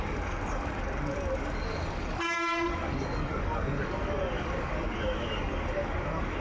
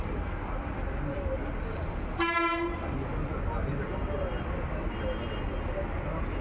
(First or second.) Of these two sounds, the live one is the second